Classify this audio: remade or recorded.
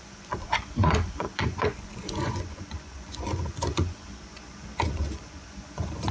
remade